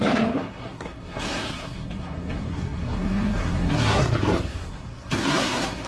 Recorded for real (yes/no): no